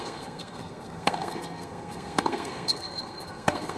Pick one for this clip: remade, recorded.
remade